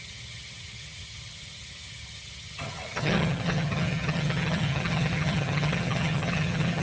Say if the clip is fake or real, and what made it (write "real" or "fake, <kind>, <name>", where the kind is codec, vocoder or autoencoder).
fake, vocoder, HiFi-GAN